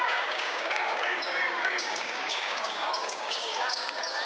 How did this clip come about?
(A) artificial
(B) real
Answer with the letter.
A